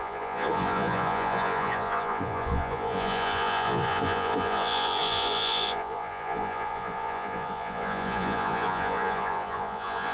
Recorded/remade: remade